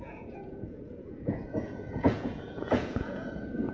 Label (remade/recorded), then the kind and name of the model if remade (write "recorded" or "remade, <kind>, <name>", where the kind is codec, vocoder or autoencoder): remade, vocoder, Vocos